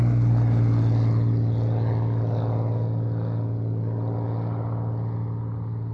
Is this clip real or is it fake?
real